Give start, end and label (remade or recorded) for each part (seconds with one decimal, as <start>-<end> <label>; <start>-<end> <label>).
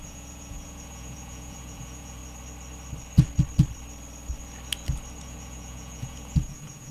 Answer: 0.0-2.2 remade; 2.2-5.2 recorded; 5.2-6.9 remade